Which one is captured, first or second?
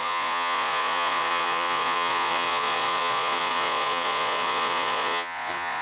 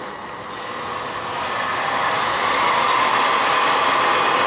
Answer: second